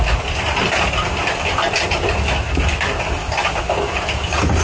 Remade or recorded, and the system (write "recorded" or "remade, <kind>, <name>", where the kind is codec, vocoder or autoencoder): recorded